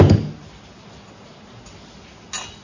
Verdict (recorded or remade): recorded